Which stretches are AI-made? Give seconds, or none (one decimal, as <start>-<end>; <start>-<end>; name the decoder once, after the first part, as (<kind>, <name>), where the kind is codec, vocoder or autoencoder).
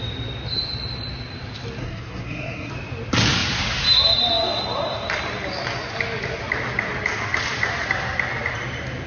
1.8-2.7 (codec, SNAC)